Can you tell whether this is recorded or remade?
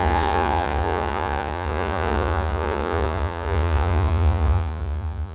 remade